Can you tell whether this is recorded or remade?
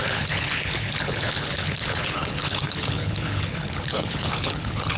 remade